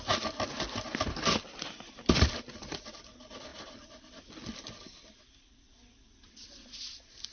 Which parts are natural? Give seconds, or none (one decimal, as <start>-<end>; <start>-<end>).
0.0-7.3